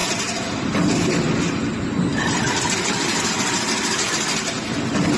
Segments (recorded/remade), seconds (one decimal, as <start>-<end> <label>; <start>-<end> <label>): 0.0-5.2 recorded